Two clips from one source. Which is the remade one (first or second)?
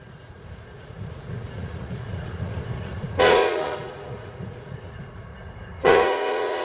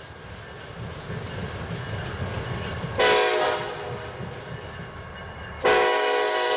first